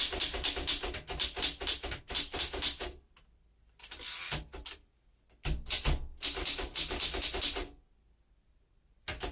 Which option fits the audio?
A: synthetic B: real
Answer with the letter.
B